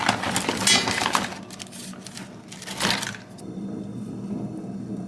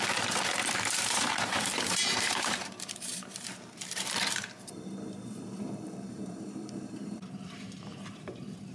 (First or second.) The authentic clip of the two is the first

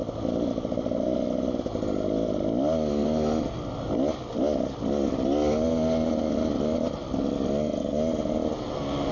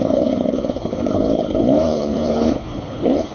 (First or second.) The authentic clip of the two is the first